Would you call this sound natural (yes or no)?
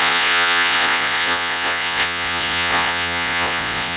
no